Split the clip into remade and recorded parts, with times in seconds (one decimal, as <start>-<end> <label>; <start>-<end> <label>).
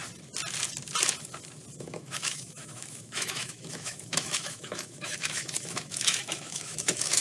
0.0-1.8 recorded; 1.8-7.2 remade